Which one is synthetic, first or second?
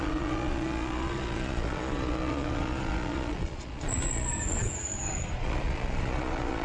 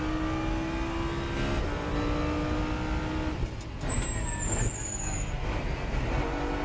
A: first